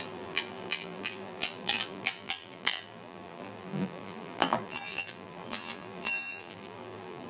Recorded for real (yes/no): no